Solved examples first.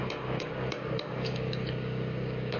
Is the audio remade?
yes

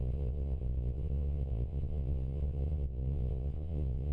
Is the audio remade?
yes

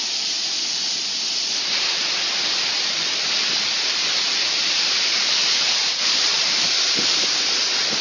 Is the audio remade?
no